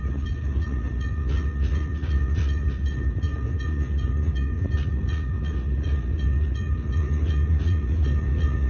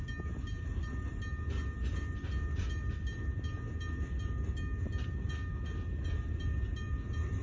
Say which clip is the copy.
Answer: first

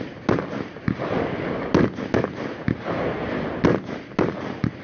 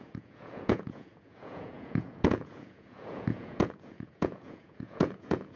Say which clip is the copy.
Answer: second